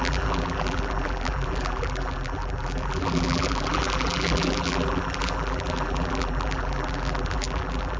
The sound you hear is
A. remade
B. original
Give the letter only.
A